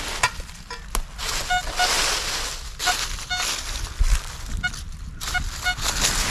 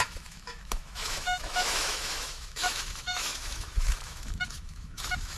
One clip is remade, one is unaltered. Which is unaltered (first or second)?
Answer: first